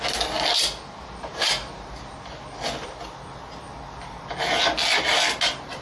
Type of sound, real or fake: real